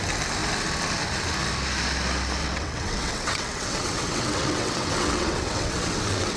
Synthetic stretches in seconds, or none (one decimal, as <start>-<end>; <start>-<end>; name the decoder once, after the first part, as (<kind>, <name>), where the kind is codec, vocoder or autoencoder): 2.4-6.4 (vocoder, WaveNeXt)